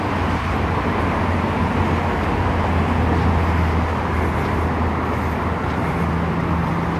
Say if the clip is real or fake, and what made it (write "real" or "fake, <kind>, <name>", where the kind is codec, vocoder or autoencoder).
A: real